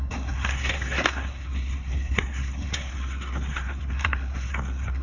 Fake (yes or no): yes